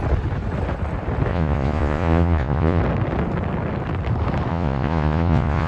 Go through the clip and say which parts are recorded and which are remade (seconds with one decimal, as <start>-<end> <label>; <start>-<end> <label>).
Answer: 0.0-1.3 recorded; 1.3-2.8 remade; 2.8-4.5 recorded; 4.5-5.7 remade